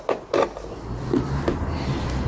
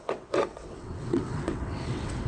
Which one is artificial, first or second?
second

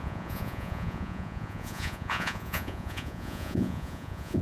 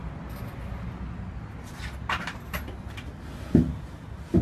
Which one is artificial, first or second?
first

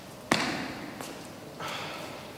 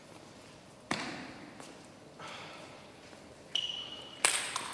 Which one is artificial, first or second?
second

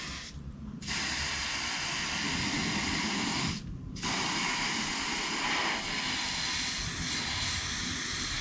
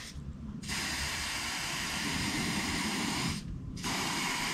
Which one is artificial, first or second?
second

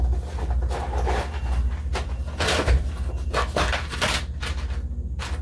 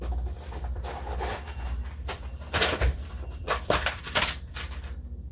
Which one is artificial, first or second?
second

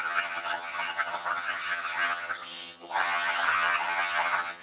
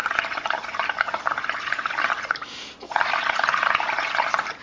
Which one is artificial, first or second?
first